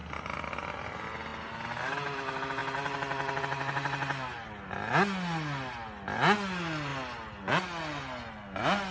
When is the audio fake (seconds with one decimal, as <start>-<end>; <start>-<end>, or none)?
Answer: none

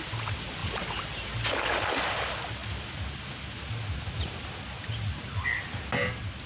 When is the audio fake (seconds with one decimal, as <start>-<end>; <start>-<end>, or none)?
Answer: none

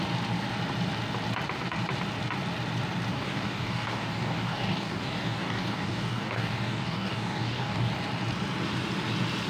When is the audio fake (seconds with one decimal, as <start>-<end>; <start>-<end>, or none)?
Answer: 3.1-7.9

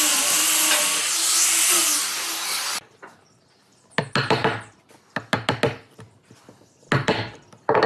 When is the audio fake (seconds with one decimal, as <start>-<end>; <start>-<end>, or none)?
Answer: none

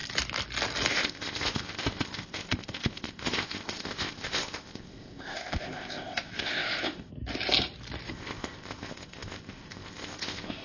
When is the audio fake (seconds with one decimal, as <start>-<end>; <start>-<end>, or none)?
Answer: 0.9-7.1; 8.1-10.6

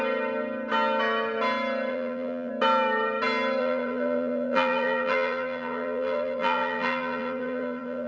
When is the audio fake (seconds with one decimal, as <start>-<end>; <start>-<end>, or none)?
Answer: 1.9-2.5; 3.6-8.1

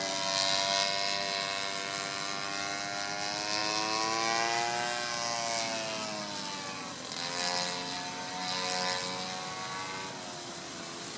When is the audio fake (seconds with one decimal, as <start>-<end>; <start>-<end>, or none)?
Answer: none

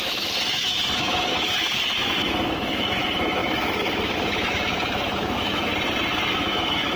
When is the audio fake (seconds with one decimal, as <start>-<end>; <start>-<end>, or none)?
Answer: 0.0-5.7; 6.3-7.0